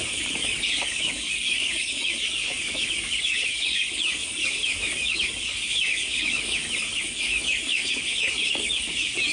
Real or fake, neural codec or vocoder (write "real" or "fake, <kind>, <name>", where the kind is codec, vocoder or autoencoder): fake, codec, DAC